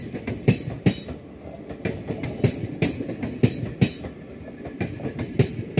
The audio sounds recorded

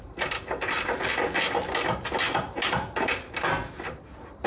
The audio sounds recorded